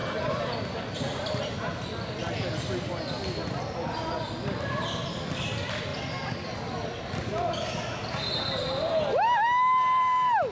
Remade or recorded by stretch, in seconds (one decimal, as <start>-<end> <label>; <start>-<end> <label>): 0.0-10.5 recorded